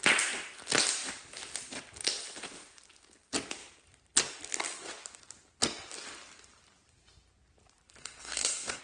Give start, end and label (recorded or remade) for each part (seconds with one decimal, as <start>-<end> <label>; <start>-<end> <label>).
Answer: 0.0-8.0 recorded; 8.0-8.8 remade